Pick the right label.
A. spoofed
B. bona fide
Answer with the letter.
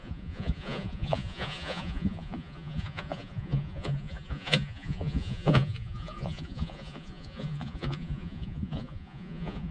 A